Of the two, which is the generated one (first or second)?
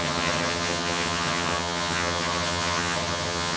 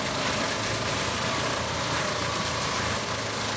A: first